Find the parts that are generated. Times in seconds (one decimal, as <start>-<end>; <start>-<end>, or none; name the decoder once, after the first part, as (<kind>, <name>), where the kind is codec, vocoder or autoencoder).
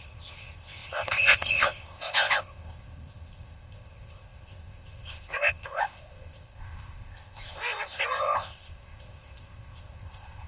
0.0-10.5 (codec, ZipCodec)